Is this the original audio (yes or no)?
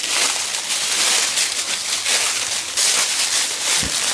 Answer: yes